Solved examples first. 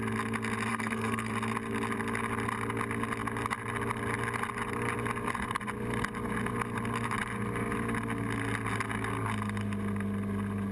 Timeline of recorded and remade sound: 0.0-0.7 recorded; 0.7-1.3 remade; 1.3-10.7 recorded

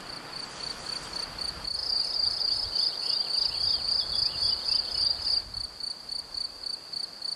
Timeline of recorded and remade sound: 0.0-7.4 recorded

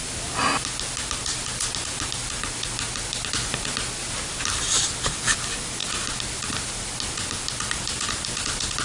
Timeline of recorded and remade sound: 0.0-8.8 recorded